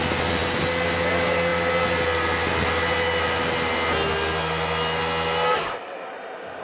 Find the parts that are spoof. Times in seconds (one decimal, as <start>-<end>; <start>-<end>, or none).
none